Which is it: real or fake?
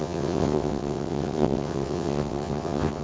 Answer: fake